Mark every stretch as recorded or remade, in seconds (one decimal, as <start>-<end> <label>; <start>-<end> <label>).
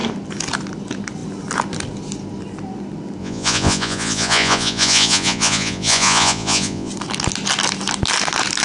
0.0-3.2 recorded; 3.2-6.9 remade; 6.9-8.6 recorded